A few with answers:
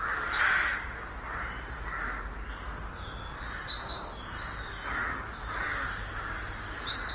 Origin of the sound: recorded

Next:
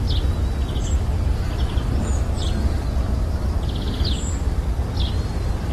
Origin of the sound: recorded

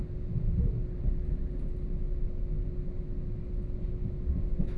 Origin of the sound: recorded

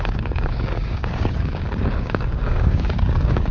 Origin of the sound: remade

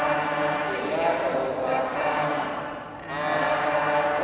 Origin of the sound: recorded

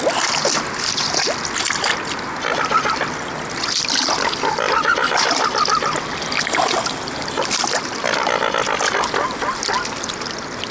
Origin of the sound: recorded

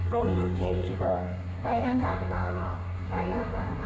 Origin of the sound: remade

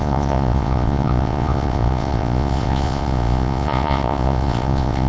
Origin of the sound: remade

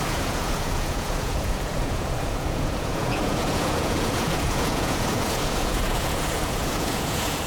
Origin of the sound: remade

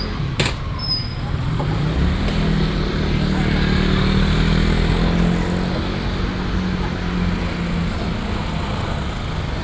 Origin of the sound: recorded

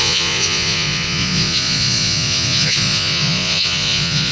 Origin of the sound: remade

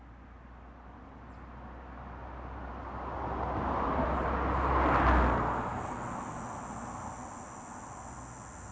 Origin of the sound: recorded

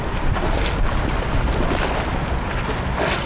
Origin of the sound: recorded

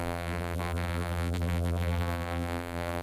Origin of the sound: remade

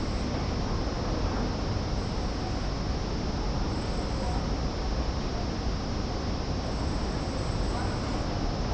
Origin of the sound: recorded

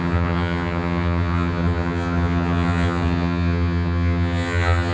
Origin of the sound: remade